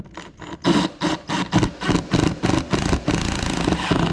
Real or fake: real